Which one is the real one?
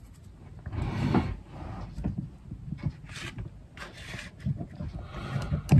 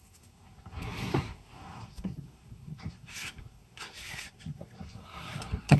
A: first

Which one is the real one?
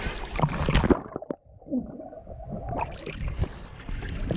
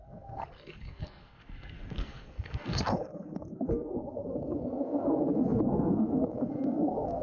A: first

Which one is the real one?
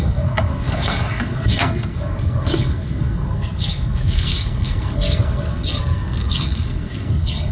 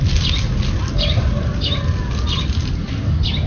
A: second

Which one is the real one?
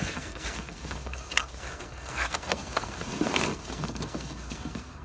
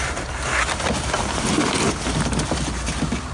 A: second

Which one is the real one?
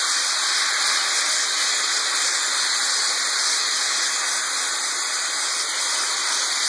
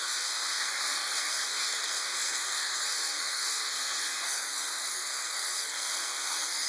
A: first